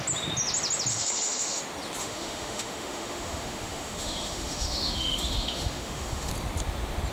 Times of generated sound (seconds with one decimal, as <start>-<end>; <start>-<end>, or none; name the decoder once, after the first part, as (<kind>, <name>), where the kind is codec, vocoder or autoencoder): 0.9-1.6 (autoencoder, DAC-VAE); 2.0-6.3